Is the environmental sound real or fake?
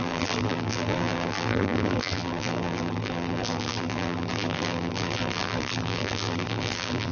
fake